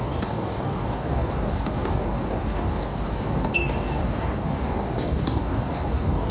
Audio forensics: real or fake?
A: fake